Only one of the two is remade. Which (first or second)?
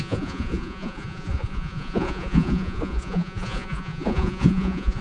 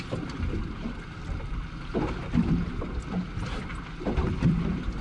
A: first